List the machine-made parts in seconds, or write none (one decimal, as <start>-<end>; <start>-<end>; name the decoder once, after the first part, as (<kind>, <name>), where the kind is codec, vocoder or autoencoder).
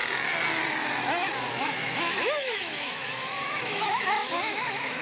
1.5-5.0 (autoencoder, DAC-VAE)